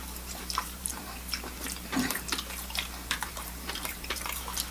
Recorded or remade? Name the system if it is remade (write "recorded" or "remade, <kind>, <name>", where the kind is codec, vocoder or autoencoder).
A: remade, vocoder, BigVGAN v2